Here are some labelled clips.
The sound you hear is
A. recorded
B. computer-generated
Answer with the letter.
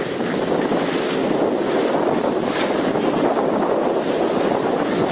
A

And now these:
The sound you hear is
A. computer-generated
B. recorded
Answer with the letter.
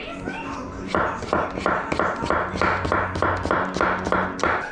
B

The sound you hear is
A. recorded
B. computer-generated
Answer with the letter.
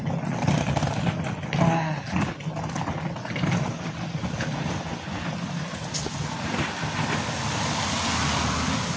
A